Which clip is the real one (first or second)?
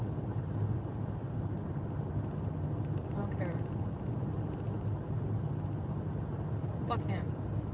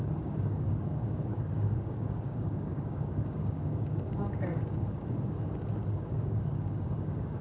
first